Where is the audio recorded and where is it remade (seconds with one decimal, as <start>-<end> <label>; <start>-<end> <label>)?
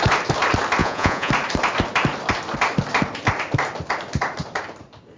0.0-0.8 recorded; 0.8-1.3 remade; 1.3-5.2 recorded